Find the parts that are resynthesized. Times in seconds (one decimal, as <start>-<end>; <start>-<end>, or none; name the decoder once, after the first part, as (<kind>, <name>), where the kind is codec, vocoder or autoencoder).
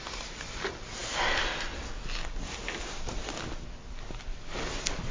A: none